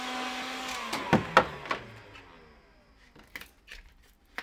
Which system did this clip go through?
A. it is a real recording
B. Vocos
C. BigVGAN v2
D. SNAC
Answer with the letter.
A